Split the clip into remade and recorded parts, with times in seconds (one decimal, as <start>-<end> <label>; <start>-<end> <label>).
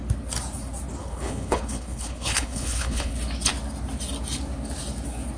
0.0-1.0 recorded; 1.0-3.1 remade; 3.1-5.4 recorded